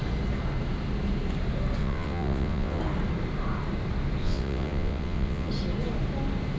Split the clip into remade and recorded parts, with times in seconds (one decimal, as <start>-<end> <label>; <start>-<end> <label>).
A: 0.0-1.8 recorded; 1.8-2.8 remade; 2.8-4.2 recorded; 4.2-5.5 remade; 5.5-6.6 recorded